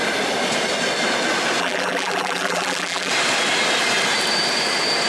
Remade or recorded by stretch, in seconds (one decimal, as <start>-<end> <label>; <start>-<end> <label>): 0.0-1.6 recorded; 1.6-3.1 remade; 3.1-5.1 recorded